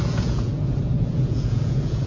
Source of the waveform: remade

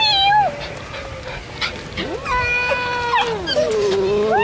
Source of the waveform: recorded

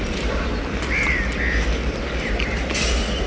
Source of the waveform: recorded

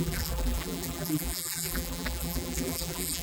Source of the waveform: remade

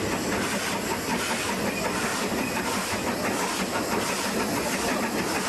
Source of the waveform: recorded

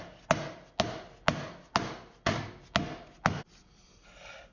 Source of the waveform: recorded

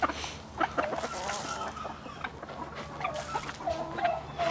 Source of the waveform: recorded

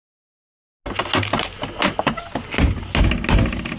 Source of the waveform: recorded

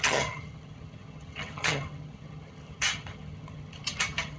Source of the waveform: remade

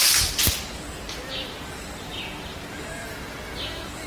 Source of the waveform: remade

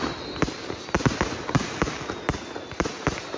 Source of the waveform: recorded